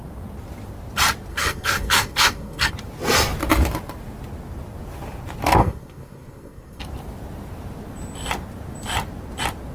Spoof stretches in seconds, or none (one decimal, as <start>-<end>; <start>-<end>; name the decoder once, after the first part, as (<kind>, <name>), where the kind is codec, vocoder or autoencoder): 1.3-2.7 (codec, SNAC); 5.6-6.8